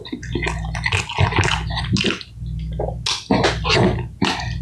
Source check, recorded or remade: recorded